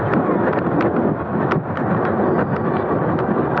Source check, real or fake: real